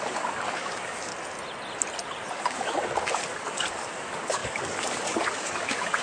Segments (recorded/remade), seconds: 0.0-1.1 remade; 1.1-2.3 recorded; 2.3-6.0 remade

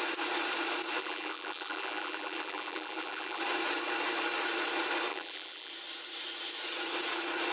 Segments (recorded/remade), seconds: 0.0-1.0 recorded; 1.0-3.4 remade; 3.4-5.1 recorded; 5.1-5.7 remade; 5.7-7.5 recorded

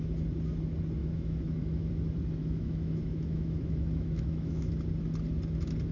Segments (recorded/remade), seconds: 0.0-1.0 recorded; 1.0-1.9 remade; 1.9-2.4 recorded; 2.4-4.7 remade; 4.7-5.9 recorded

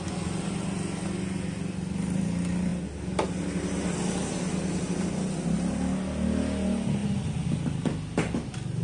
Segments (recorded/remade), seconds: 0.0-8.8 recorded

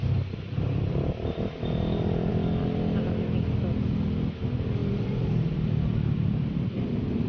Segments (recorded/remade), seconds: 0.0-4.8 recorded; 4.8-6.8 remade; 6.8-7.3 recorded

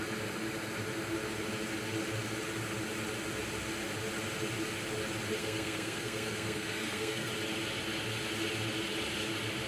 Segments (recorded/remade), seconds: 0.0-5.4 recorded; 5.4-7.3 remade; 7.3-9.7 recorded

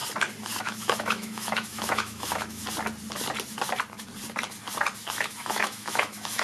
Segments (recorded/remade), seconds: 0.0-0.6 recorded; 0.6-2.6 remade; 2.6-5.1 recorded; 5.1-6.4 remade